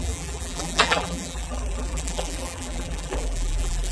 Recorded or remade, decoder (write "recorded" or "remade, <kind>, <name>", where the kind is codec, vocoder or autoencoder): remade, vocoder, BigVGAN v2